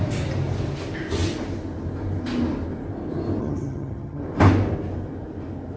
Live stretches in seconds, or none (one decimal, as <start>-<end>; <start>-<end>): 0.0-3.4; 4.2-5.8